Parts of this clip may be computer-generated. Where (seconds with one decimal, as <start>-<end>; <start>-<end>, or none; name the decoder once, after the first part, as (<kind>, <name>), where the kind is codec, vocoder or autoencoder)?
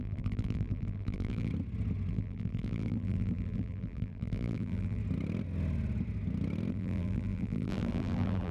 0.0-1.5 (vocoder, BigVGAN v2); 2.1-5.0; 6.7-8.5